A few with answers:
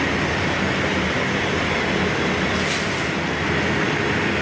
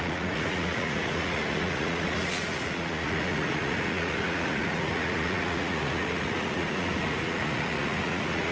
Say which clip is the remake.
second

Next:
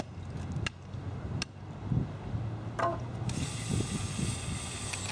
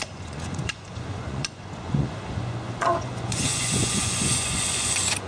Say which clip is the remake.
second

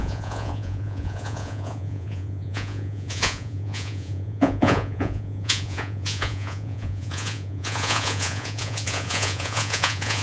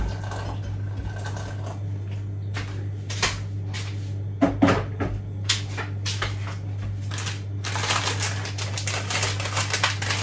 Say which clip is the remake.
first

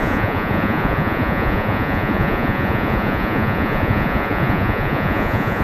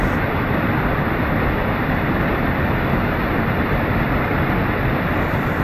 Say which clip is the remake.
first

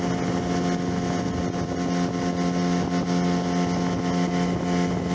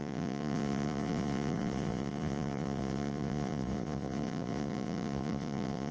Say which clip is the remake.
second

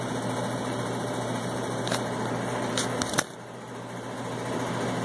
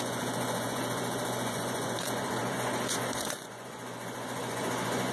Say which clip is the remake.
second